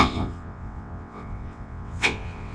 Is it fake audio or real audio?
fake